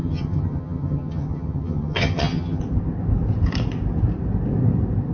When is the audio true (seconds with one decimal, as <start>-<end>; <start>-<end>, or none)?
2.6-5.1